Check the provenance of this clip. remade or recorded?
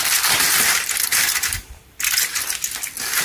recorded